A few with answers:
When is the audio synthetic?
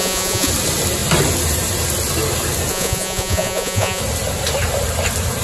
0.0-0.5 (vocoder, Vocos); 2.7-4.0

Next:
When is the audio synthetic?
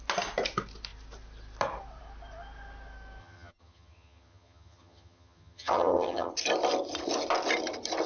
3.2-6.3 (vocoder, HiFi-GAN)